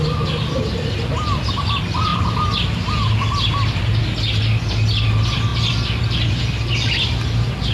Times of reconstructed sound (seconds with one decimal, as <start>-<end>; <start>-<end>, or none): none

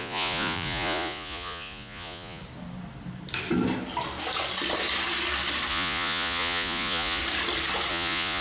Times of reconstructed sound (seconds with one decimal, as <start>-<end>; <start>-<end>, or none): 0.0-2.4; 5.7-7.2; 7.9-8.4